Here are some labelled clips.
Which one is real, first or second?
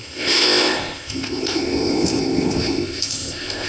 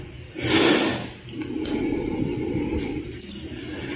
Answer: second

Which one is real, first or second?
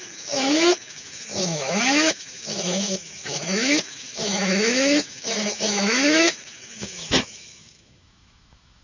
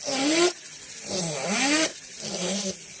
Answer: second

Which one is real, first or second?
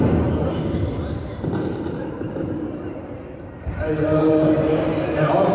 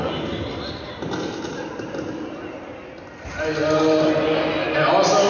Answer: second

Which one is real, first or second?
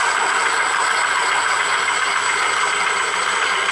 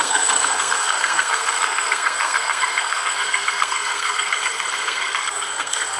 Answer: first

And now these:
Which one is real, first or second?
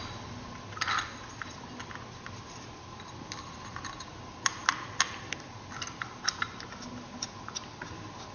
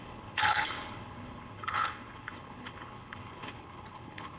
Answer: first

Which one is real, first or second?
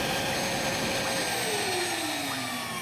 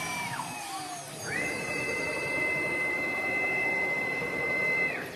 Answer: first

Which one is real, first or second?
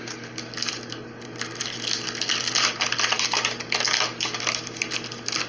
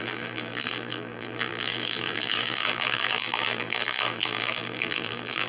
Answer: first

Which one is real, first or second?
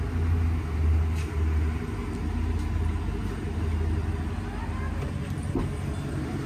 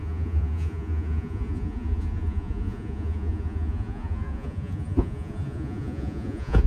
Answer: first